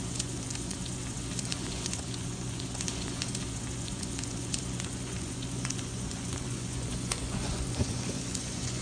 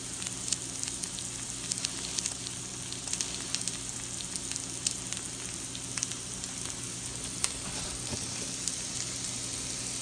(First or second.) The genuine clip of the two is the second